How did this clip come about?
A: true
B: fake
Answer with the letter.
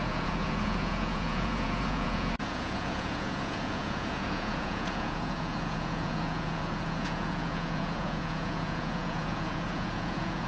B